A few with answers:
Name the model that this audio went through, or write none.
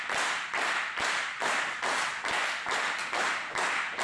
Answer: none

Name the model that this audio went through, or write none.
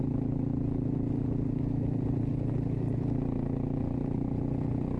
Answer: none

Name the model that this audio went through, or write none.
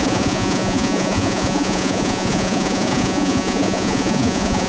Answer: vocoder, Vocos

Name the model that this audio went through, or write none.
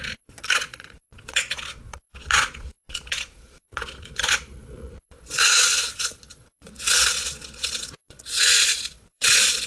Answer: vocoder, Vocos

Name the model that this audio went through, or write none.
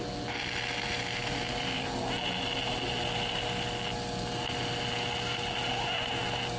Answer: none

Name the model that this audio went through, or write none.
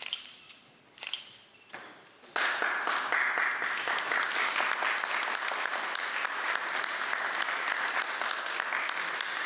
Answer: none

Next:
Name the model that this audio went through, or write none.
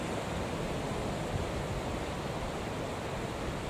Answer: none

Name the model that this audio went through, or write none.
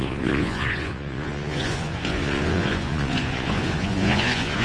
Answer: vocoder, Vocos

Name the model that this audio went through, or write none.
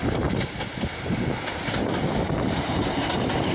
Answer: none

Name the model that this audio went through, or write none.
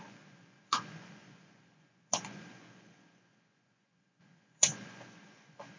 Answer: vocoder, Vocos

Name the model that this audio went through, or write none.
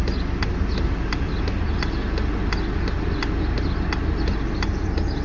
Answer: none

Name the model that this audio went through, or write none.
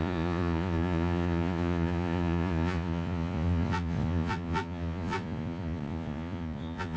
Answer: vocoder, Vocos